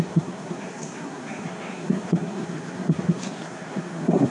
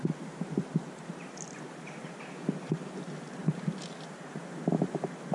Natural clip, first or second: second